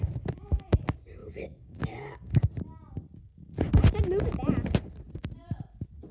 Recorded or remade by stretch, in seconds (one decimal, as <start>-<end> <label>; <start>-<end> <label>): 0.0-1.2 recorded; 1.2-2.4 remade; 2.4-6.1 recorded